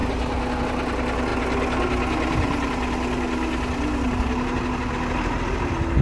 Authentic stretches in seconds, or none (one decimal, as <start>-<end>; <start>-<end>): 0.0-6.0